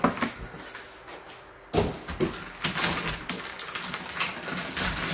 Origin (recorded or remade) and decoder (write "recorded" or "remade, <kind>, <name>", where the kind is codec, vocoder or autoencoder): recorded